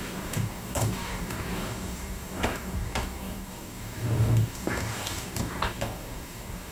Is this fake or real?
fake